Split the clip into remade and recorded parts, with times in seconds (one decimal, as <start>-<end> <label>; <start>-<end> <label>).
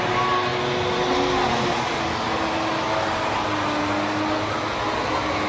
0.0-5.5 recorded